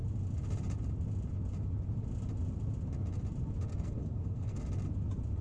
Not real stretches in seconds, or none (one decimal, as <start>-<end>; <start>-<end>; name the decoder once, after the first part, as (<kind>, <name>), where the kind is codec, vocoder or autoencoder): 3.7-4.6 (codec, SNAC)